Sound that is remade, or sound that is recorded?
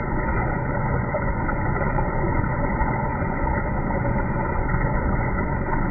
remade